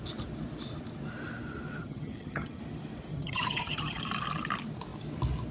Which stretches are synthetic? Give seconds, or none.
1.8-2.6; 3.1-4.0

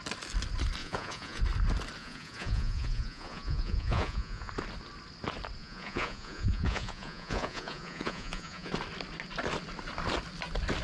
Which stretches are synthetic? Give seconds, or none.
0.8-1.4; 2.0-4.5; 5.6-8.7

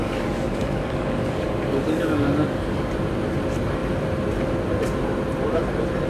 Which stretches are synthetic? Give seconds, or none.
0.0-2.9

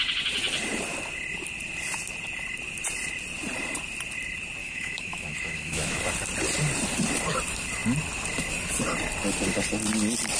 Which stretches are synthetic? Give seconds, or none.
4.6-6.0

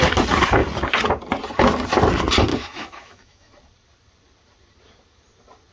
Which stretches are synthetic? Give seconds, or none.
2.5-3.5